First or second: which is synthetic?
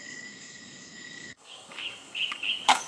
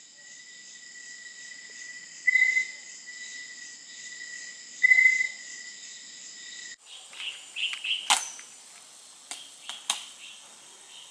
first